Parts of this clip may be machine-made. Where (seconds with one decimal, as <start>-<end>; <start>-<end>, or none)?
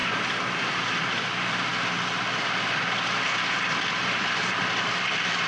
0.0-5.5